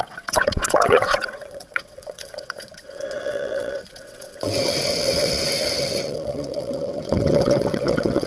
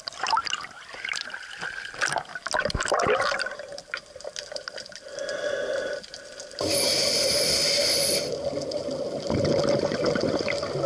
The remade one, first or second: first